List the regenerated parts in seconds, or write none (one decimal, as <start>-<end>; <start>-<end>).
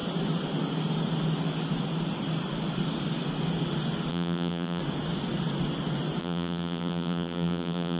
4.1-4.8; 6.2-8.0